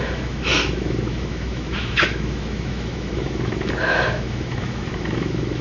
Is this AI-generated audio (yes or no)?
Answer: yes